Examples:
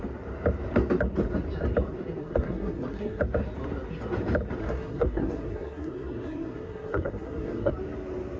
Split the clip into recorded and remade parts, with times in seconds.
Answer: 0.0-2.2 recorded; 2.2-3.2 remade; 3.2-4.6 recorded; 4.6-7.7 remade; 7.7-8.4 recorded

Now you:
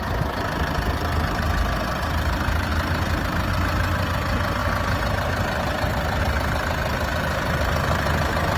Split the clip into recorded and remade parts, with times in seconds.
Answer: 0.0-8.6 recorded

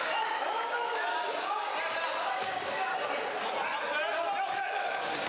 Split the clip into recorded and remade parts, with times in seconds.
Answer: 0.0-1.7 remade; 1.7-2.3 recorded; 2.3-2.9 remade; 2.9-4.6 recorded; 4.6-5.3 remade

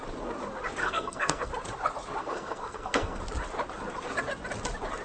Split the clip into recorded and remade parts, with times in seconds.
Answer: 0.0-0.8 recorded; 0.8-1.5 remade; 1.5-2.2 recorded; 2.2-3.2 remade; 3.2-5.0 recorded

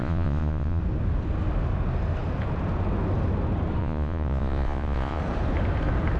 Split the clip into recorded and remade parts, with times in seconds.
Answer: 0.0-0.8 remade; 0.8-3.8 recorded; 3.8-5.2 remade; 5.2-6.2 recorded

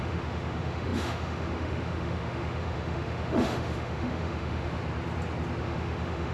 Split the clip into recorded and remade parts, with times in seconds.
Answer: 0.0-4.8 remade; 4.8-5.6 recorded; 5.6-6.3 remade

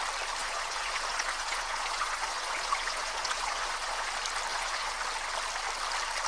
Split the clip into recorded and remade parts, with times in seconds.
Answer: 0.0-0.4 recorded; 0.4-4.1 remade; 4.1-4.5 recorded; 4.5-5.0 remade; 5.0-6.3 recorded